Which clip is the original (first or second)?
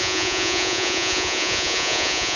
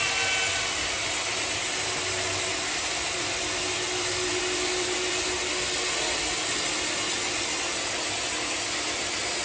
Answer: second